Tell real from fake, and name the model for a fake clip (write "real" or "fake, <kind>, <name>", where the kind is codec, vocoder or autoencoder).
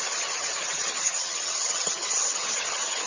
fake, vocoder, HiFi-GAN